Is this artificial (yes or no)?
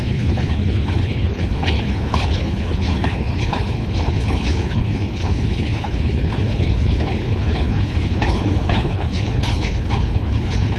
yes